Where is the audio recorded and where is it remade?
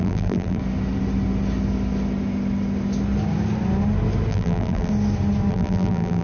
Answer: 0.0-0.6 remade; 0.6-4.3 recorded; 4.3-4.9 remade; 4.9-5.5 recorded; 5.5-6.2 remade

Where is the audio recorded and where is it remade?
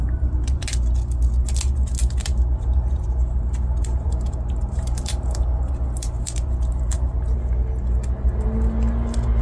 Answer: 0.0-0.6 remade; 0.6-2.2 recorded; 2.2-7.4 remade; 7.4-9.4 recorded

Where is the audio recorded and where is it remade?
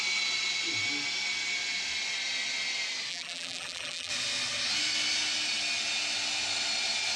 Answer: 0.0-3.1 recorded; 3.1-4.1 remade; 4.1-7.2 recorded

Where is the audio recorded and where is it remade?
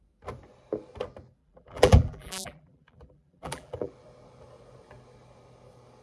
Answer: 0.0-1.4 recorded; 1.4-3.9 remade; 3.9-6.0 recorded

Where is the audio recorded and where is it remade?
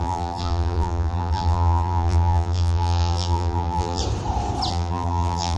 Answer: 0.0-4.0 remade; 4.0-4.7 recorded; 4.7-5.6 remade